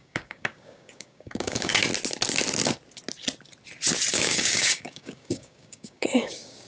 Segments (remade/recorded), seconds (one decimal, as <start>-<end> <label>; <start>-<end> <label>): 0.0-1.7 remade; 1.7-4.1 recorded; 4.1-6.7 remade